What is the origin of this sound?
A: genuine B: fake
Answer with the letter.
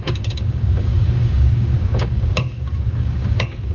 B